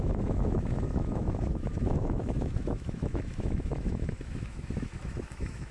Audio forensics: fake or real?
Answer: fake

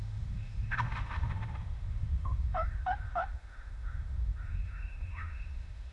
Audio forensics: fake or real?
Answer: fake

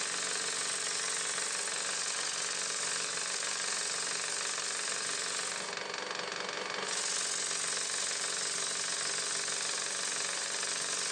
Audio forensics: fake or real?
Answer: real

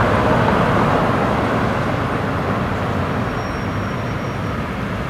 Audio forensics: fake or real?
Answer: real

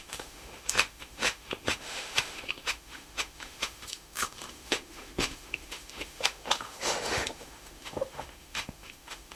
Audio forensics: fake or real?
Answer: fake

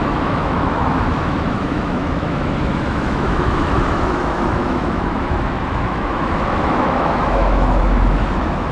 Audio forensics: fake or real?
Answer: fake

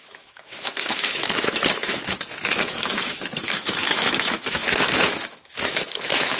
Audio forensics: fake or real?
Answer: fake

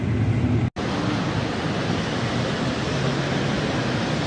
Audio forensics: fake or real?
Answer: real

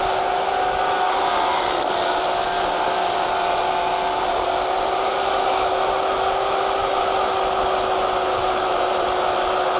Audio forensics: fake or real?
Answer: real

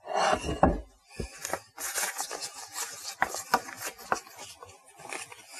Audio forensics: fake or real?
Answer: real